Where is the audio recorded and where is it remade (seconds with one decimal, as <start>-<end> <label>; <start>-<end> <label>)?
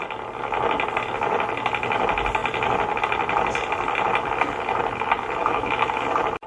0.0-5.4 recorded; 5.4-6.0 remade; 6.0-6.5 recorded